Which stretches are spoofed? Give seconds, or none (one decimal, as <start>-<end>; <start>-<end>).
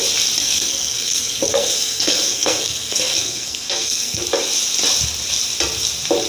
0.4-4.2